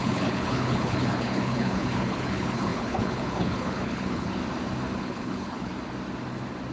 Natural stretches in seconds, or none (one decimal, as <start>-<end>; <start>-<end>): 4.4-5.0; 5.7-6.7